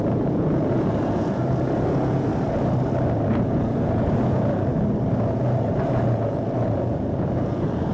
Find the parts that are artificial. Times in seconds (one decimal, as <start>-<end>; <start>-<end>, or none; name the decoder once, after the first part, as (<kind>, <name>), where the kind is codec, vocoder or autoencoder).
0.0-2.3 (vocoder, Vocos); 3.3-4.7; 5.4-7.9